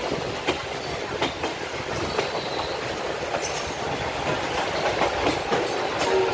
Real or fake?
real